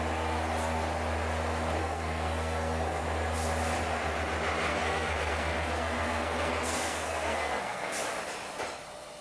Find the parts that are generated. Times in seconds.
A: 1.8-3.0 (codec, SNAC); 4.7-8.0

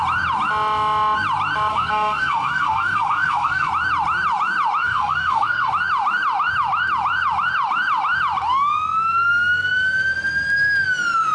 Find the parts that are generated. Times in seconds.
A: 1.7-3.7 (codec, SNAC); 4.8-5.7

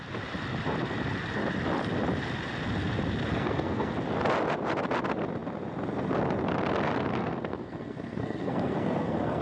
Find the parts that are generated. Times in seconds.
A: 3.3-3.9 (codec, SNAC); 7.2-9.4

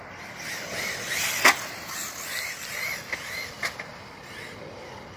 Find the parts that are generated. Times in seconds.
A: none

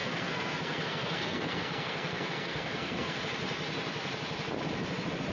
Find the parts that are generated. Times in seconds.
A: 0.0-3.2 (codec, SNAC)